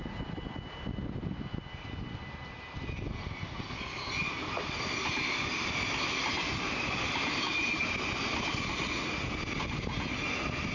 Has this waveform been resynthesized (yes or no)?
no